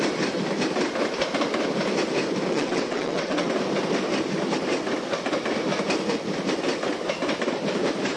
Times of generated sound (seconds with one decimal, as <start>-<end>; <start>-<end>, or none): 2.5-3.5